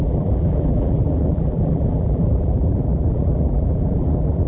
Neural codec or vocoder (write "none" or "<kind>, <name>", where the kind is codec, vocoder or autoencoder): vocoder, BigVGAN v2